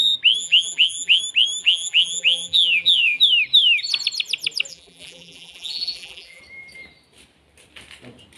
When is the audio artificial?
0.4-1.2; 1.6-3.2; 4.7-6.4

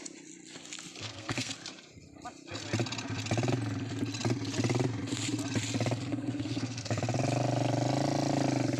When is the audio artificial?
1.0-1.5; 6.1-7.0